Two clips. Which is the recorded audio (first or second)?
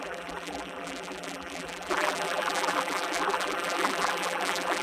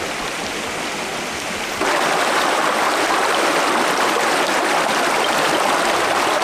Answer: second